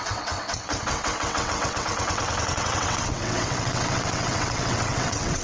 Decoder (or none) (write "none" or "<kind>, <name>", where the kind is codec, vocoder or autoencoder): vocoder, WaveNeXt